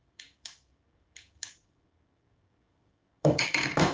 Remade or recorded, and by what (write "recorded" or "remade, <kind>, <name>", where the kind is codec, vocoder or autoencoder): remade, codec, DAC